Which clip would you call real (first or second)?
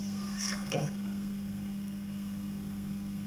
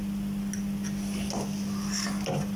second